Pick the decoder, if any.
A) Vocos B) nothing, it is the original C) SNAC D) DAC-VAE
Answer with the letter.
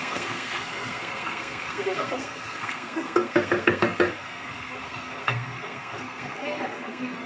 C